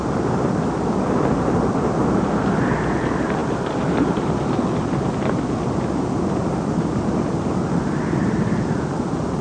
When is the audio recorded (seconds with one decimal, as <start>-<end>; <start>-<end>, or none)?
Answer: 0.0-9.4

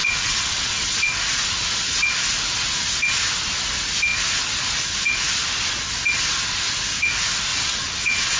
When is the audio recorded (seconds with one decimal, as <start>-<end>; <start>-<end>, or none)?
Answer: 1.0-7.5